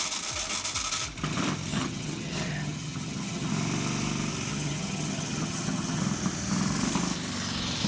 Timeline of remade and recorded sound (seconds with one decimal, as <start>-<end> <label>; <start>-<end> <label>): 0.0-1.7 recorded; 1.7-3.5 remade; 3.5-4.5 recorded; 4.5-6.0 remade; 6.0-7.9 recorded